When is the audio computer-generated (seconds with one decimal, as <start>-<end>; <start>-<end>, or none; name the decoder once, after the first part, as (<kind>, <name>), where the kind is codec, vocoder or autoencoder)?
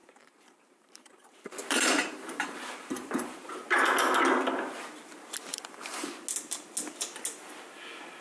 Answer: 0.0-3.5 (vocoder, BigVGAN v2); 5.5-6.1